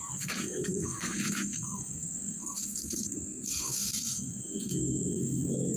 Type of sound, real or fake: fake